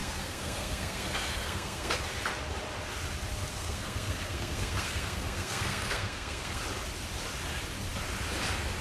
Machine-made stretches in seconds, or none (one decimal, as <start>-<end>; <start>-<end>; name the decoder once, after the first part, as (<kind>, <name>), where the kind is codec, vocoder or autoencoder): 0.0-2.0 (codec, SNAC); 3.5-6.6